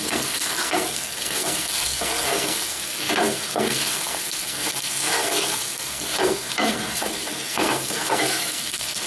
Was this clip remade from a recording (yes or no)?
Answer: yes